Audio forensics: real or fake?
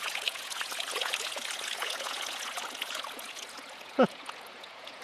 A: fake